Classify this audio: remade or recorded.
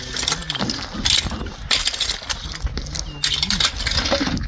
recorded